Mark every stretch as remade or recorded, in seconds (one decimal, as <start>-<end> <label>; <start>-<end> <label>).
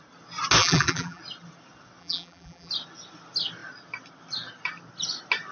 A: 0.0-0.6 recorded; 0.6-1.2 remade; 1.2-2.0 recorded; 2.0-2.7 remade; 2.7-5.5 recorded